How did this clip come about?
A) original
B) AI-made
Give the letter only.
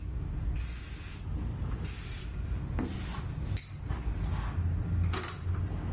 A